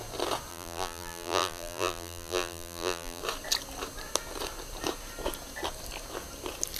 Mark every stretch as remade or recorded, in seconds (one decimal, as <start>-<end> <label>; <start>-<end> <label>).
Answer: 0.0-0.5 recorded; 0.5-3.2 remade; 3.2-6.8 recorded

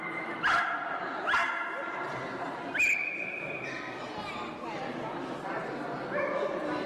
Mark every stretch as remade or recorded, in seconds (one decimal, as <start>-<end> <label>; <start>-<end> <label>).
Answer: 0.0-3.0 recorded; 3.0-3.9 remade; 3.9-6.9 recorded

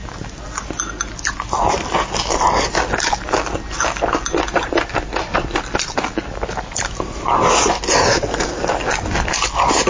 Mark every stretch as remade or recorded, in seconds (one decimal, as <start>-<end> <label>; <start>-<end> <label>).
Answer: 0.0-9.9 recorded

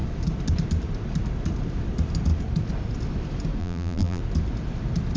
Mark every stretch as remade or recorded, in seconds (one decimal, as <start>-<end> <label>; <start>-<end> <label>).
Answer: 0.0-3.6 recorded; 3.6-4.2 remade; 4.2-5.2 recorded

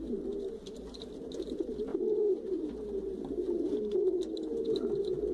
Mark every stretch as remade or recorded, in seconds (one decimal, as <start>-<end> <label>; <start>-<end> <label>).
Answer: 0.0-5.3 recorded